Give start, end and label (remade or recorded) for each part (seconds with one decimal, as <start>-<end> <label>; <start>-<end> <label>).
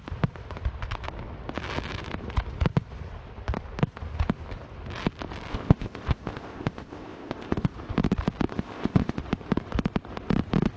0.0-5.5 recorded; 5.5-7.7 remade; 7.7-8.5 recorded; 8.5-9.2 remade; 9.2-10.8 recorded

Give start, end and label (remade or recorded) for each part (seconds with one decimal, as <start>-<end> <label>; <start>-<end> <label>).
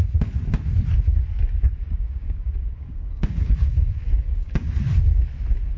0.0-1.8 recorded; 1.8-4.7 remade; 4.7-5.8 recorded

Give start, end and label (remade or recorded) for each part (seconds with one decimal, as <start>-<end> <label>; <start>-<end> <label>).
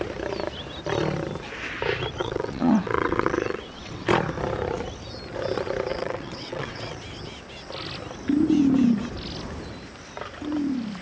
0.0-2.2 recorded; 2.2-4.1 remade; 4.1-5.9 recorded; 5.9-7.0 remade; 7.0-11.0 recorded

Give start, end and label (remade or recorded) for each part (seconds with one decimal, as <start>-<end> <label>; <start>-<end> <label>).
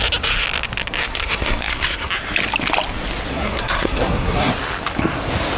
0.0-1.1 recorded; 1.1-2.1 remade; 2.1-3.3 recorded; 3.3-4.5 remade; 4.5-5.6 recorded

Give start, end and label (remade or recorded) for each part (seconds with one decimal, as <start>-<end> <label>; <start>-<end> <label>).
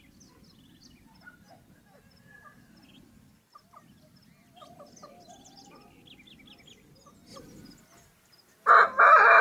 0.0-9.4 recorded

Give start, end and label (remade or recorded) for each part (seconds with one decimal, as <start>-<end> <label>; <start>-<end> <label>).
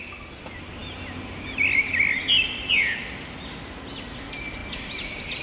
0.0-5.4 recorded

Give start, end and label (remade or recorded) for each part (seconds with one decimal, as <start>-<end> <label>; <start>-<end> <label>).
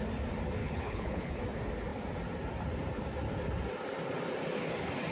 0.0-0.6 recorded; 0.6-1.4 remade; 1.4-5.1 recorded